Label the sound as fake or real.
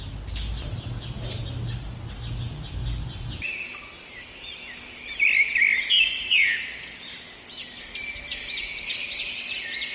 real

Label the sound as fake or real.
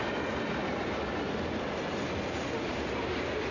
real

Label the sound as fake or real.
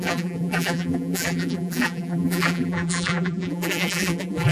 fake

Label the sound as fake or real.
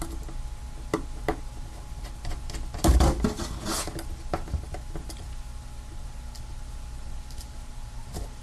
real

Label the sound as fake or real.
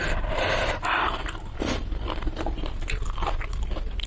fake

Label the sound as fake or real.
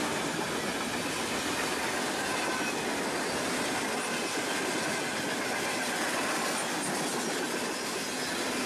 real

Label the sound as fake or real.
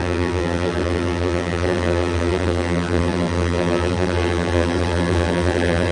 fake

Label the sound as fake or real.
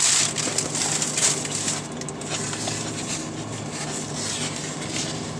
real